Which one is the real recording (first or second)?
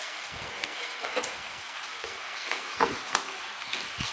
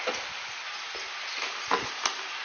second